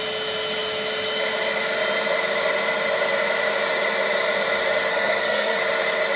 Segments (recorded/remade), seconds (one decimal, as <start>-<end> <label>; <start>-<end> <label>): 0.0-4.9 recorded; 4.9-5.6 remade; 5.6-6.2 recorded